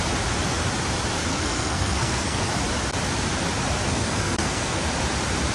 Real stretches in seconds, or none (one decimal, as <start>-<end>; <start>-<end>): 0.0-1.3; 2.4-3.9; 4.8-5.5